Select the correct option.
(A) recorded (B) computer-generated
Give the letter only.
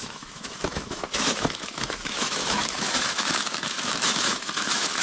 B